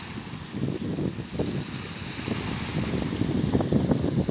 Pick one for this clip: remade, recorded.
recorded